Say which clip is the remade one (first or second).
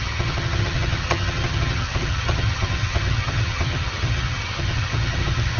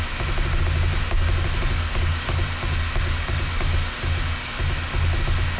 first